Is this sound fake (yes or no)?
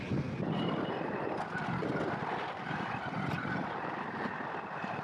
no